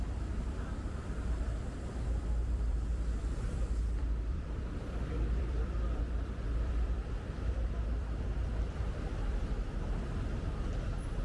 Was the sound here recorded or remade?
remade